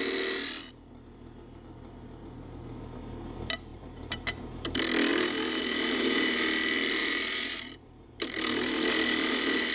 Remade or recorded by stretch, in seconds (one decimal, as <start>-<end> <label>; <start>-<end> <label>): 0.0-3.7 recorded; 3.7-4.5 remade; 4.5-5.1 recorded; 5.1-6.0 remade; 6.0-7.0 recorded; 7.0-8.9 remade; 8.9-9.7 recorded